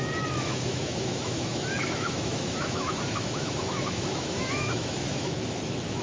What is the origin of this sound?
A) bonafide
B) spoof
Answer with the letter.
B